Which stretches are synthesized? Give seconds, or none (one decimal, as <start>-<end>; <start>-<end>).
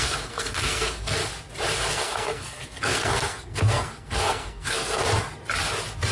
0.0-1.2; 1.9-5.0